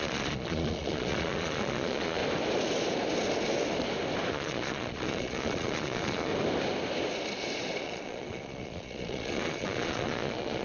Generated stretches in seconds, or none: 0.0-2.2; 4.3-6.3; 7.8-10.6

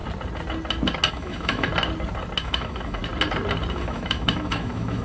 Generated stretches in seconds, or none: 1.1-1.7; 2.4-3.0; 3.7-5.0

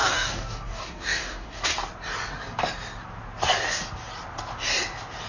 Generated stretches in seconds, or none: 0.0-1.7

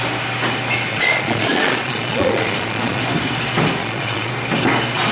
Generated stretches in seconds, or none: 0.9-3.0; 3.8-4.3

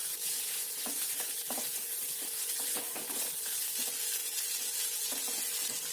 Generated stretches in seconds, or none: 0.0-3.5; 4.2-5.4